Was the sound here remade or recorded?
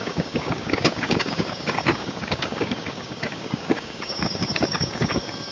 remade